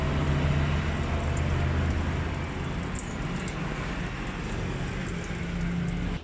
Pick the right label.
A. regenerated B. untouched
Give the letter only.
B